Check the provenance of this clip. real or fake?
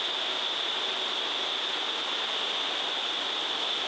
real